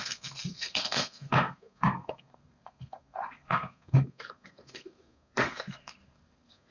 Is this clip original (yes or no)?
no